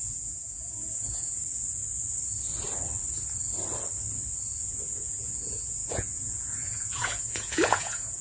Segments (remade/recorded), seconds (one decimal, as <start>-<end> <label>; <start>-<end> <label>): 0.0-1.4 remade; 1.4-4.6 recorded; 4.6-8.2 remade